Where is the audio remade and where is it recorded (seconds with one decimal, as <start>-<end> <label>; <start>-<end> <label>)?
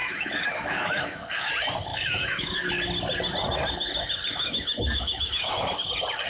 0.0-1.5 remade; 1.5-1.9 recorded; 1.9-2.7 remade; 2.7-4.3 recorded; 4.3-5.6 remade; 5.6-6.3 recorded